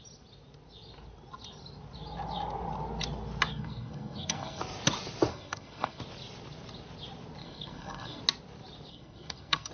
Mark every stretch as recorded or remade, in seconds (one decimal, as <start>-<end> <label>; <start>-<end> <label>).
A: 0.0-3.5 recorded; 3.5-4.6 remade; 4.6-5.3 recorded; 5.3-6.0 remade; 6.0-7.4 recorded; 7.4-8.2 remade; 8.2-8.9 recorded; 8.9-9.7 remade